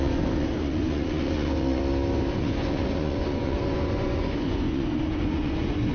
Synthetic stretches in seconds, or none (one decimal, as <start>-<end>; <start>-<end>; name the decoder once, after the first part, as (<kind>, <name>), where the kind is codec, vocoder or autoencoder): 0.0-1.8 (vocoder, Vocos); 2.3-5.9